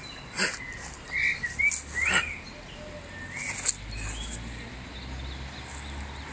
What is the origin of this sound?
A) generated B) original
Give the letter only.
B